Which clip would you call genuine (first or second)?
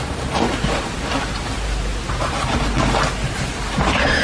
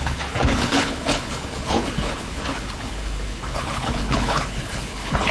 first